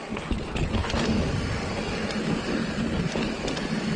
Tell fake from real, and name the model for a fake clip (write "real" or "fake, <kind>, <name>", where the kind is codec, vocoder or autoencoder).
real